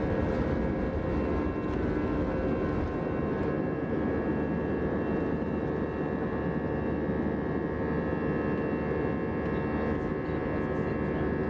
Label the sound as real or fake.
real